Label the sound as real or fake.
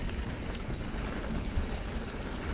real